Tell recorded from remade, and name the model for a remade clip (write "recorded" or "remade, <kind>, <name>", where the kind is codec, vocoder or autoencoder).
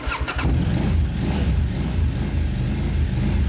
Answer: recorded